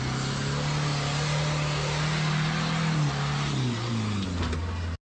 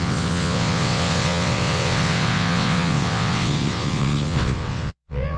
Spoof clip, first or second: second